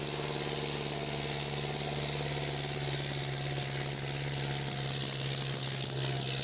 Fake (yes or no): no